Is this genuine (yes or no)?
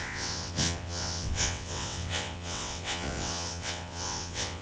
no